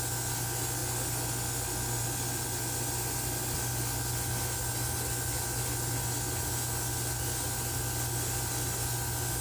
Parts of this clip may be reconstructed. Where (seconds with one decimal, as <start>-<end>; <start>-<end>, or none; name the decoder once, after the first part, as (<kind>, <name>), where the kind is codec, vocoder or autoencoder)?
none